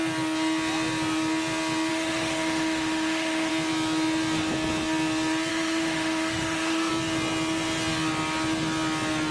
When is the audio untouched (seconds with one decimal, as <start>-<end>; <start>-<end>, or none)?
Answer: 0.0-1.9; 3.5-5.5; 6.9-9.3